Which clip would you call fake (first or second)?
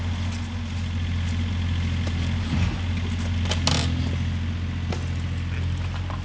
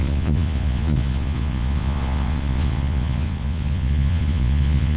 second